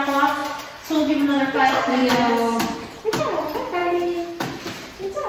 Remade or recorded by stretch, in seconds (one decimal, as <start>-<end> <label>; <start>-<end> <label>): 0.0-5.3 recorded